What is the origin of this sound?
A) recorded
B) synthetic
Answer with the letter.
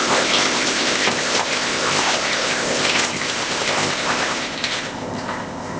B